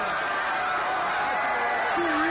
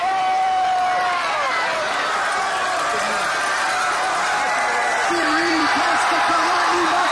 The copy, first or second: second